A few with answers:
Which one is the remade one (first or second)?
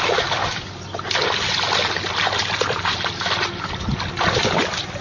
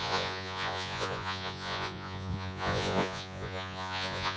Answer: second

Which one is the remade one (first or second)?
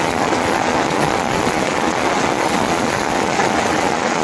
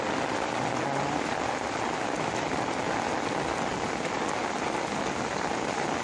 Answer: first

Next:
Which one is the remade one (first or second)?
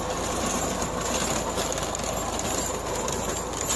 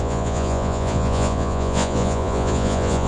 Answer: second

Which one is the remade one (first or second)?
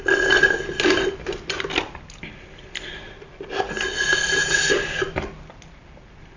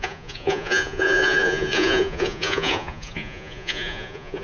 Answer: second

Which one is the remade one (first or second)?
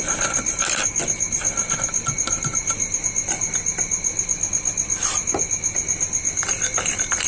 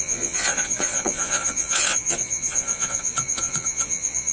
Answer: second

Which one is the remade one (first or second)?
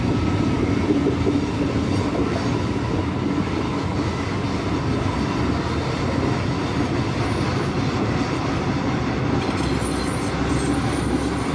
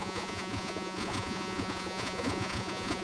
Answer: second